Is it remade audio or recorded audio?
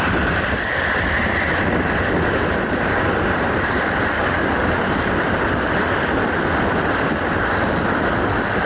recorded